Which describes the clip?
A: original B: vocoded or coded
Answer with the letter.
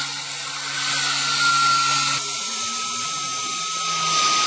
A